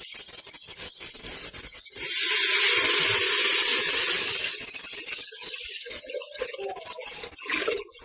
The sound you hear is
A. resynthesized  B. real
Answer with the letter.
B